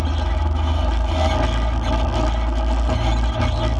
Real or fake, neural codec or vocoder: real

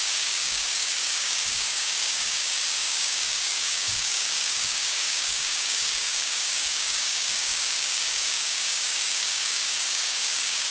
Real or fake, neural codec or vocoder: fake, codec, DAC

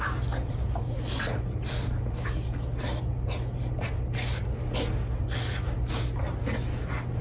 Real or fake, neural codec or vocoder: real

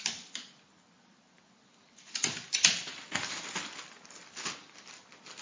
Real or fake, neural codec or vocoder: real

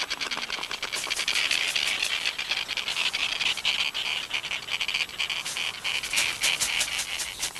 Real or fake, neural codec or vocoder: real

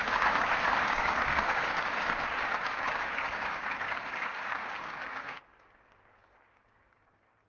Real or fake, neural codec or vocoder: fake, codec, DAC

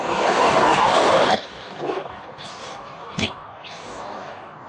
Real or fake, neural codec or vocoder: fake, codec, DAC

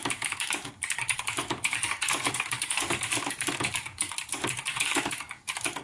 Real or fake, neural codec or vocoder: fake, codec, DAC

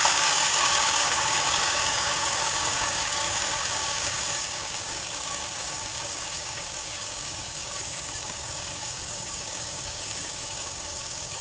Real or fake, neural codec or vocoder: fake, codec, DAC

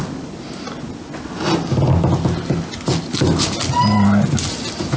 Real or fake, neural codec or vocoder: real